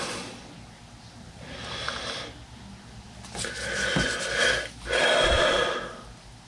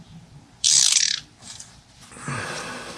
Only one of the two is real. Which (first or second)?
first